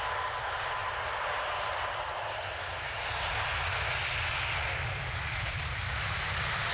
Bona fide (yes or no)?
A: yes